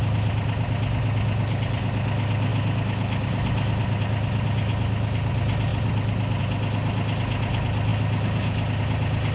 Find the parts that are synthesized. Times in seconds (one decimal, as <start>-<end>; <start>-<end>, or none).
none